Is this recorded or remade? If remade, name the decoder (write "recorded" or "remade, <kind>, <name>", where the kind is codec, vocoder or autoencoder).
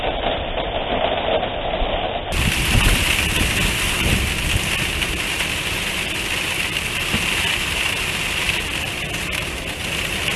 recorded